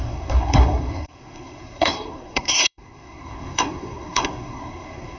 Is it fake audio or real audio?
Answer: fake